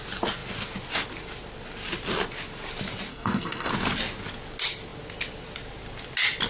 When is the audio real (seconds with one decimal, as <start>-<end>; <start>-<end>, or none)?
0.0-3.1; 3.7-6.5